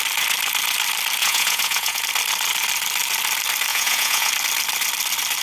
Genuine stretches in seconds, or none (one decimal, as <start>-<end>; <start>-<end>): 0.0-1.2; 2.0-3.7; 4.3-5.4